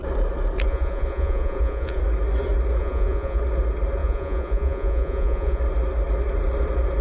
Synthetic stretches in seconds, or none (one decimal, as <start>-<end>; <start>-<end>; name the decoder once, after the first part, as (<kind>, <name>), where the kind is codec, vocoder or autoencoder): 0.7-2.0 (vocoder, Vocos); 2.8-3.4; 4.0-5.6